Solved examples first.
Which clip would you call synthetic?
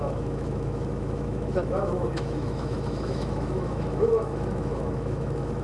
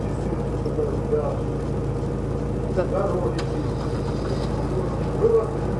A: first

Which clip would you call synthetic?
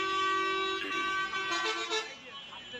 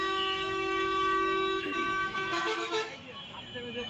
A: second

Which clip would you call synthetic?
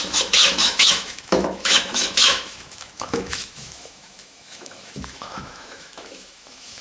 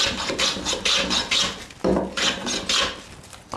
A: first